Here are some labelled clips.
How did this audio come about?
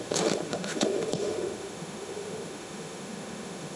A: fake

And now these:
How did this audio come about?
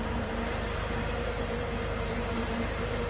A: fake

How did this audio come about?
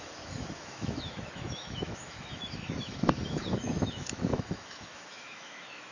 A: fake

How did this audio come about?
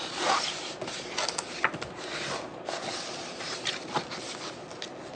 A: real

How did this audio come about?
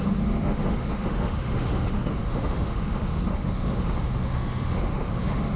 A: fake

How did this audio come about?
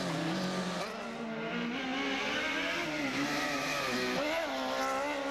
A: real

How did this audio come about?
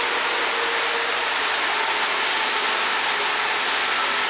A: real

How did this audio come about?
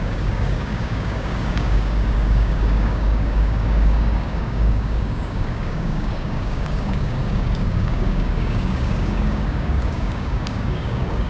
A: fake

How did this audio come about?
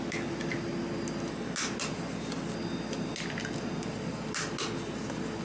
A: real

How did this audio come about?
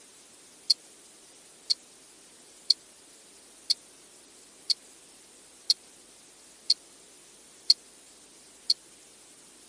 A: real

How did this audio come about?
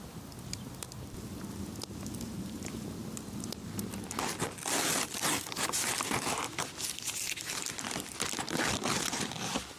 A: real